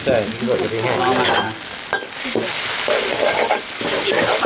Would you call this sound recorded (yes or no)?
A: yes